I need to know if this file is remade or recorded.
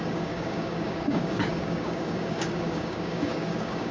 remade